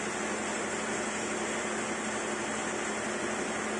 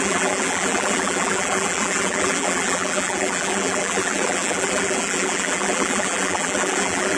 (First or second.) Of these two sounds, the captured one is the first